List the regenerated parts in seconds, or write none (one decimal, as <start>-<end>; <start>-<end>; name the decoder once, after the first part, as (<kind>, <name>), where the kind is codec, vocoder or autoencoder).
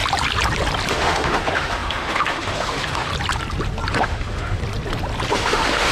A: 0.9-3.1 (autoencoder, DAC-VAE); 4.0-4.6; 5.3-5.9